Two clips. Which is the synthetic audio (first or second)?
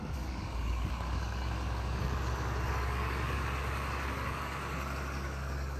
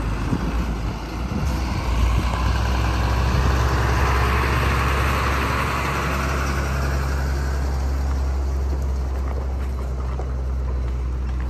first